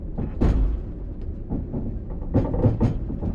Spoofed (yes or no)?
no